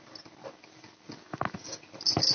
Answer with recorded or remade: recorded